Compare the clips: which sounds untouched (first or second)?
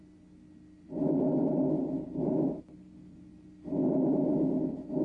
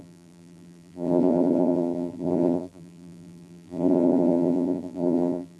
first